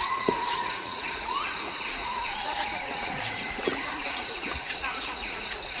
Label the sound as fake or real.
fake